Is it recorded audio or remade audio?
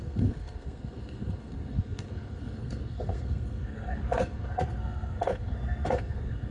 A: remade